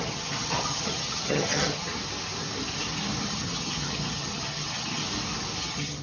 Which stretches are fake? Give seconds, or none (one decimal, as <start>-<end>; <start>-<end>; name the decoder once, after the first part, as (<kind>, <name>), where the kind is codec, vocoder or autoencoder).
0.0-2.0 (vocoder, HiFi-GAN); 3.3-5.0; 5.6-6.0